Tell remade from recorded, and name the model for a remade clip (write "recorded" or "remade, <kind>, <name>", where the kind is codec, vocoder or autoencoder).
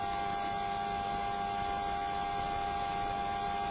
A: recorded